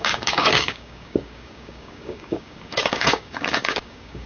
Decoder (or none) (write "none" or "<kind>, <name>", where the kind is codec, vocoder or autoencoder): codec, DAC